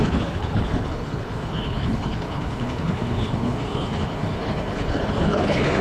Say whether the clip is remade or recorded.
remade